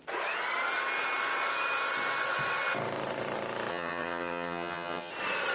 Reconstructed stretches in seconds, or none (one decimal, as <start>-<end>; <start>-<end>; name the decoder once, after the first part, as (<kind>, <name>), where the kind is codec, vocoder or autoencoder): 3.7-5.1 (vocoder, HiFi-GAN)